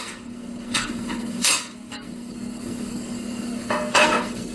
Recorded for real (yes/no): no